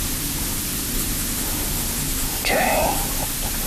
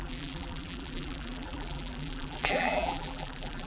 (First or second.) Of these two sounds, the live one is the first